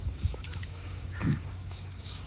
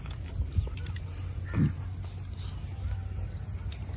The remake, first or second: first